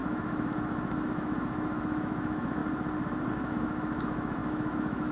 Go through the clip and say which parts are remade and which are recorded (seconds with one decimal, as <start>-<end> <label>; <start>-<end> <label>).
0.0-2.6 remade; 2.6-3.3 recorded; 3.3-5.1 remade